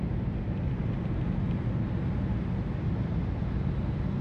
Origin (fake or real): real